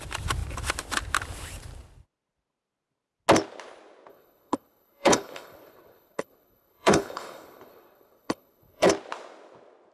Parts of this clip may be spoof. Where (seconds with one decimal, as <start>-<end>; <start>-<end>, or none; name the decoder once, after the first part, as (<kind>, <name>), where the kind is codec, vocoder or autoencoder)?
4.1-8.9 (codec, HILCodec)